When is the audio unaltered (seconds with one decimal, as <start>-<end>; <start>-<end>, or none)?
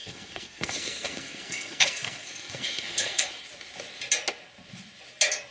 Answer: 3.3-5.5